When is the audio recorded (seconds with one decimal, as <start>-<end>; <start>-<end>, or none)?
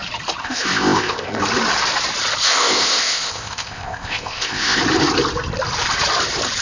0.0-0.4; 1.4-2.4; 4.8-6.6